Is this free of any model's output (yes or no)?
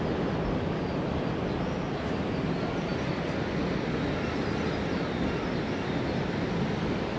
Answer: yes